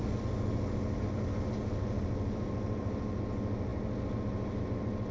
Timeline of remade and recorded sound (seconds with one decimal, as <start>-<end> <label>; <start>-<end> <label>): 0.0-5.1 recorded